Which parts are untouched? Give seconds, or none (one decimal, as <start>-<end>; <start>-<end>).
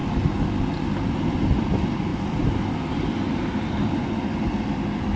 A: 0.0-5.2